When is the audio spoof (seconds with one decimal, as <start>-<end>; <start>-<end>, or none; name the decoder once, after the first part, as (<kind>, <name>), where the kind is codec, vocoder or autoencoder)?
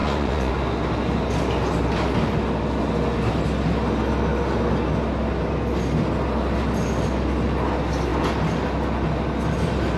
0.0-0.5 (vocoder, Vocos)